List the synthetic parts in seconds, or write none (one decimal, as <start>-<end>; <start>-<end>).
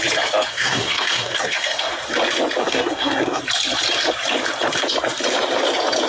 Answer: 0.5-1.9; 2.6-3.4